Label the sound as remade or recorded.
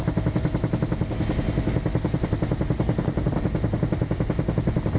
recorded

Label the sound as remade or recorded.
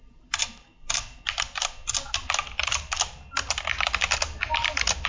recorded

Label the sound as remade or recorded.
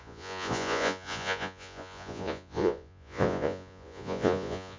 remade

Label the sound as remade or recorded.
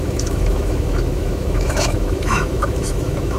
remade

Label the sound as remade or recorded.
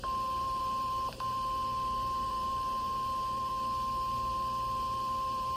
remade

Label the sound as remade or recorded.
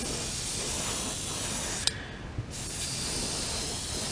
recorded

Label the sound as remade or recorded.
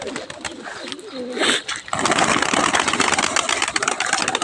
recorded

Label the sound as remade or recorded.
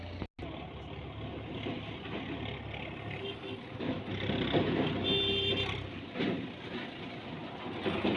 recorded